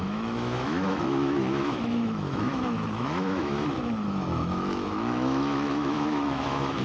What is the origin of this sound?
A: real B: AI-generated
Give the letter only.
B